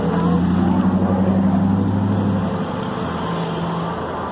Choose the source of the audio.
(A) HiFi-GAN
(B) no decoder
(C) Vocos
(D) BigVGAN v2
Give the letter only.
B